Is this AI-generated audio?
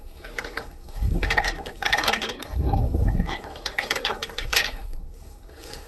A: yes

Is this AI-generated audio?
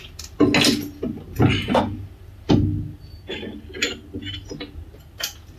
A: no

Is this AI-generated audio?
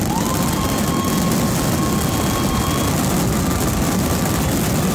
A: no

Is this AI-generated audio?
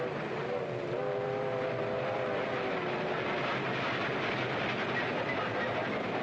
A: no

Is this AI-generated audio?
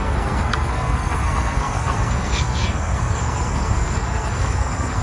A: yes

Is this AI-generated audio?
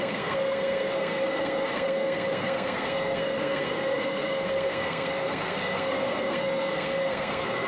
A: yes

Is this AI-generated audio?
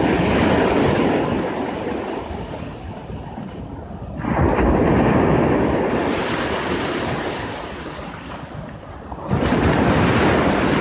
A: no